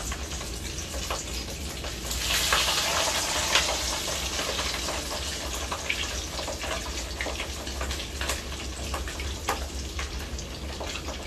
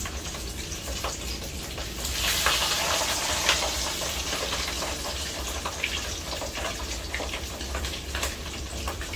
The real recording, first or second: first